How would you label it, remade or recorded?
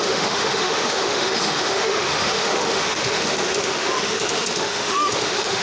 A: remade